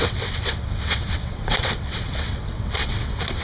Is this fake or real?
fake